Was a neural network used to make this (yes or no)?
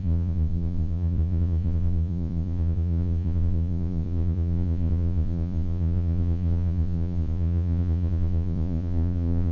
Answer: yes